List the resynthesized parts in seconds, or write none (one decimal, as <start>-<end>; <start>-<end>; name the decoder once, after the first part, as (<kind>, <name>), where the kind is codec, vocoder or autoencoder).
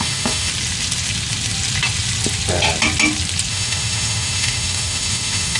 0.0-0.5 (autoencoder, DAC-VAE); 3.5-5.6